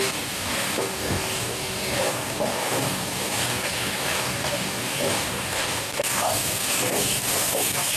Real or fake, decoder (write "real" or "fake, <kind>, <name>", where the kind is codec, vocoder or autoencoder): fake, codec, DAC